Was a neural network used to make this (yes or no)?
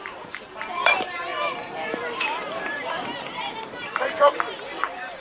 yes